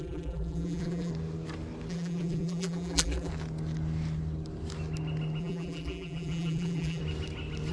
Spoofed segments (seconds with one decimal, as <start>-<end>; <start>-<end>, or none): 0.0-1.1; 1.9-3.3; 5.4-7.0